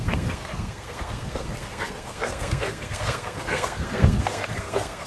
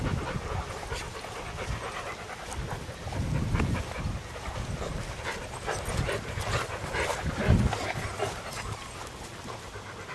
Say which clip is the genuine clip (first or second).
second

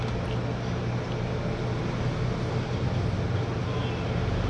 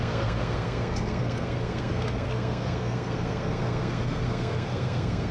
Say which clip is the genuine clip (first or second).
first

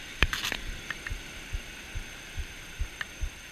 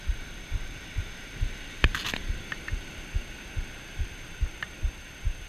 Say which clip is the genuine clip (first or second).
second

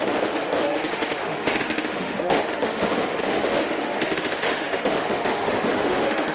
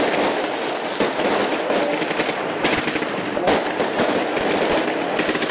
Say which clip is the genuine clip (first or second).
second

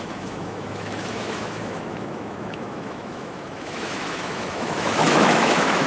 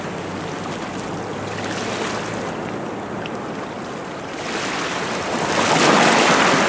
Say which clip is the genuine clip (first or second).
second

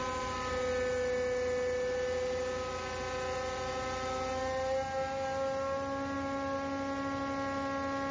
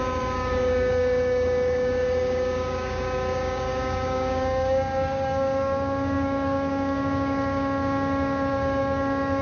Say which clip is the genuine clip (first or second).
first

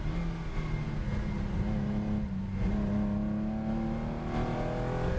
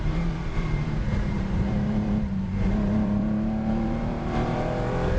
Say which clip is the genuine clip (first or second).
first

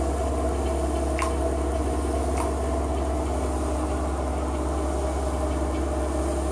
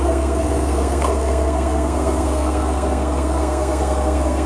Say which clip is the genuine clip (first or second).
first